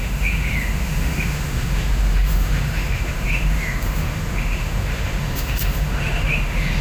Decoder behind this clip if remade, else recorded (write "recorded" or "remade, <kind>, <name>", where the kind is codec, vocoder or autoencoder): remade, autoencoder, DAC-VAE